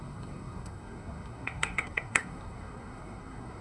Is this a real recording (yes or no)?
no